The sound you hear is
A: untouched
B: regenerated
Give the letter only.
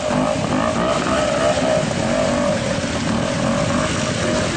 A